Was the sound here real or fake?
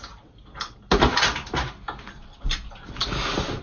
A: real